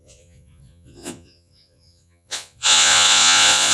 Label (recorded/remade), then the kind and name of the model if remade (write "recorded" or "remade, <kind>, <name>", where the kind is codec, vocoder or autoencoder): remade, vocoder, Vocos